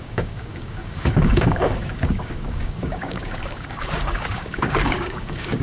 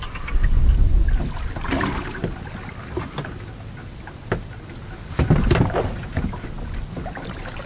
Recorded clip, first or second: second